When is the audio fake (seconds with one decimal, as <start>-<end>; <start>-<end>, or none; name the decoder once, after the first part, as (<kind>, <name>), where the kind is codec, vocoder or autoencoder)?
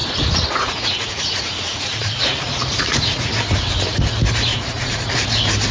0.0-3.3 (vocoder, Vocos); 4.5-5.1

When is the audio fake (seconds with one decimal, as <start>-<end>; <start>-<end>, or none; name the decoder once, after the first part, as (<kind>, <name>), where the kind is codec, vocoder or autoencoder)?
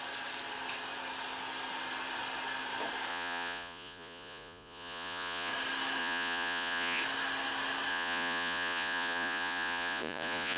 3.1-5.5 (vocoder, Vocos); 6.0-7.0; 7.9-10.6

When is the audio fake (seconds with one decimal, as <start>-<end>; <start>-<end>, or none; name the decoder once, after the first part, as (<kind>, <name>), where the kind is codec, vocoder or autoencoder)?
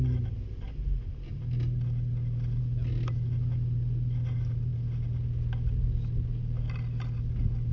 none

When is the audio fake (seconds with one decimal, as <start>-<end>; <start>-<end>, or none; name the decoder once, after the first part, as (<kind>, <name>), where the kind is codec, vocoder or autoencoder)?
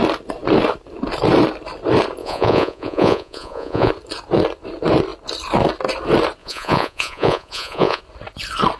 2.2-3.9 (vocoder, Vocos); 6.4-8.0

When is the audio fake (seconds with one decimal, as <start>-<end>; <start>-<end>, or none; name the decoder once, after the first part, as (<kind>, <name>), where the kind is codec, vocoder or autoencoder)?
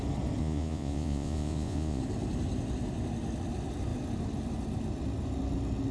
0.4-2.0 (vocoder, Vocos)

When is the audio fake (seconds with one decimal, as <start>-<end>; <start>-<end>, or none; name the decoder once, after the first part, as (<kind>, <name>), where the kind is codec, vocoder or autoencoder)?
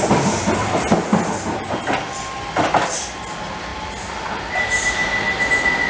none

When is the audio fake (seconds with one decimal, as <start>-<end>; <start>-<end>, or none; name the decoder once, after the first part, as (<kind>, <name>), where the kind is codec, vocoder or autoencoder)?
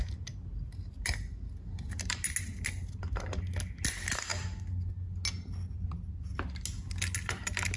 none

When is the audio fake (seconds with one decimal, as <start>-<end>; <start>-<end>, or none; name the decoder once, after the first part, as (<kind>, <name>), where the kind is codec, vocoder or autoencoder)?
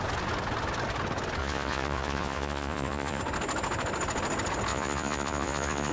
1.4-3.2 (vocoder, Vocos); 4.7-5.9